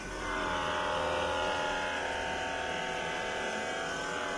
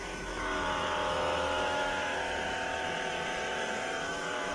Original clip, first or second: first